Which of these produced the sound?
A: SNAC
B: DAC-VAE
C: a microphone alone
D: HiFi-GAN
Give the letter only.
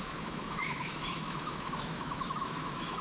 B